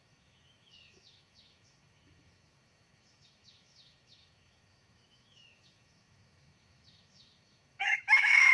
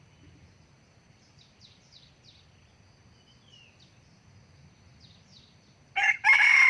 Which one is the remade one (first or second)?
first